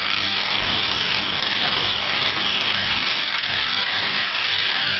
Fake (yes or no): yes